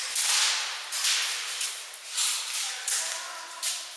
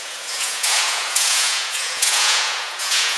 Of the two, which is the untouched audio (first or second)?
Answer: first